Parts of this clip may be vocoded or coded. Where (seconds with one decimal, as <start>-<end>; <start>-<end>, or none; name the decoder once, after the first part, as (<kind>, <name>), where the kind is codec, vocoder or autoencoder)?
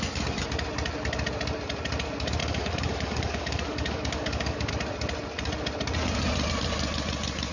2.4-4.7 (codec, DAC)